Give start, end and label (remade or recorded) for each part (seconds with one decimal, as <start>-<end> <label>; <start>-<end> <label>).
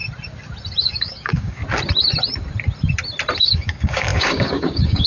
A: 0.0-0.8 recorded; 0.8-1.6 remade; 1.6-3.4 recorded; 3.4-5.1 remade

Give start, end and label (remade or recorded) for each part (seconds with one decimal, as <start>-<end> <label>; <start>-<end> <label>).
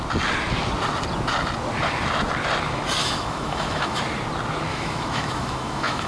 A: 0.0-3.0 recorded; 3.0-4.0 remade; 4.0-4.7 recorded; 4.7-6.1 remade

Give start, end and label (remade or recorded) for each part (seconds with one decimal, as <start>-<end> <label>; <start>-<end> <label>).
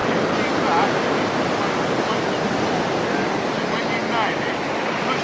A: 0.0-5.2 recorded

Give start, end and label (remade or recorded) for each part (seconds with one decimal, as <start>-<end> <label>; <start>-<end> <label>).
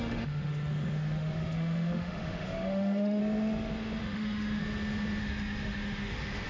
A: 0.0-3.2 remade; 3.2-4.0 recorded; 4.0-4.6 remade; 4.6-5.2 recorded; 5.2-6.5 remade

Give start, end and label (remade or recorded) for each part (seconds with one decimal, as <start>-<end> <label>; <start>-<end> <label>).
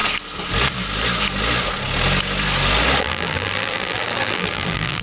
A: 0.0-3.0 recorded; 3.0-5.0 remade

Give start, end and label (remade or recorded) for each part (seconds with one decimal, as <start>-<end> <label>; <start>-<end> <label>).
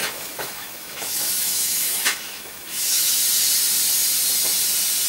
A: 0.0-3.1 remade; 3.1-5.1 recorded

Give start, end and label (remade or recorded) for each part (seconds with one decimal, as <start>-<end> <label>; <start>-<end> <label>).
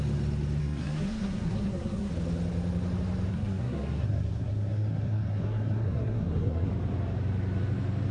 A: 0.0-0.6 recorded; 0.6-2.1 remade; 2.1-3.3 recorded; 3.3-6.7 remade; 6.7-8.1 recorded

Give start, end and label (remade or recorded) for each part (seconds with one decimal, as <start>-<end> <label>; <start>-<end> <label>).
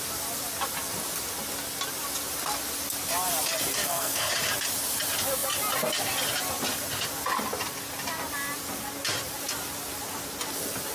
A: 0.0-3.8 recorded; 3.8-4.3 remade; 4.3-10.9 recorded